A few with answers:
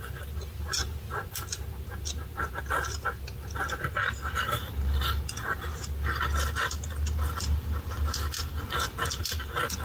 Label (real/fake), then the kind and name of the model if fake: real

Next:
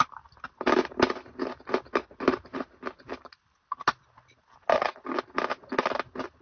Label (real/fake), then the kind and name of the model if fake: real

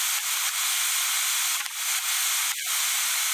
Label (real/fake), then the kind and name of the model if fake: real